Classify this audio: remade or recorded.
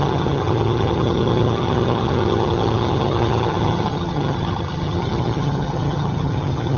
remade